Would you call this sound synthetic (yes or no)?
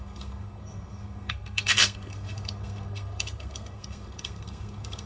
yes